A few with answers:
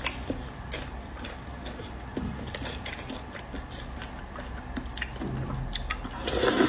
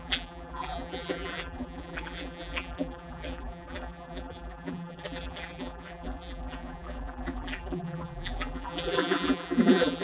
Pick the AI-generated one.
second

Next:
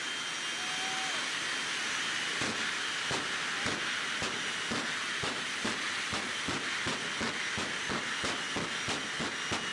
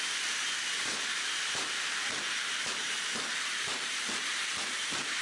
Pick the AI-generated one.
second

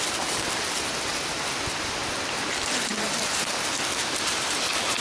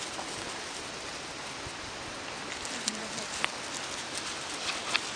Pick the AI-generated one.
first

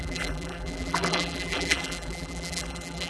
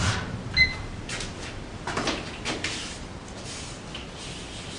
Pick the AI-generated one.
first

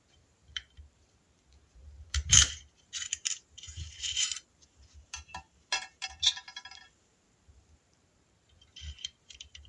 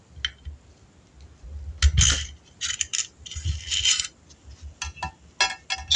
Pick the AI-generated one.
first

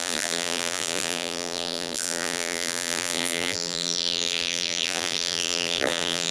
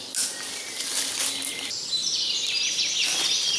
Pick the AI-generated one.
first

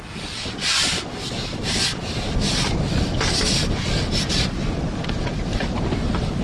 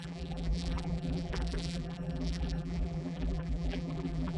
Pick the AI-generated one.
second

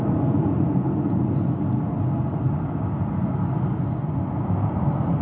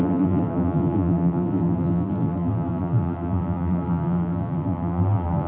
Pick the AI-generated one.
second